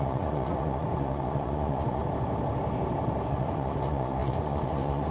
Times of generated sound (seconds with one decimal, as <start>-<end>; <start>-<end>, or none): 0.0-2.0; 3.3-5.1